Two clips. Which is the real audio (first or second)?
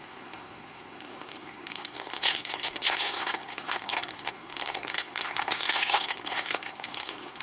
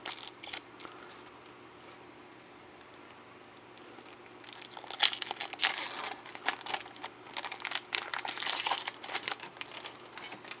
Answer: second